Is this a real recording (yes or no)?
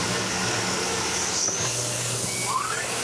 no